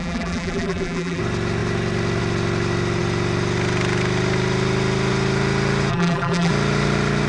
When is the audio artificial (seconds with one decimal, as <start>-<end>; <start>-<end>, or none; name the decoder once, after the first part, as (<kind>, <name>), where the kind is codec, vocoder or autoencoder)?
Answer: 0.0-1.2 (vocoder, BigVGAN v2); 5.9-6.5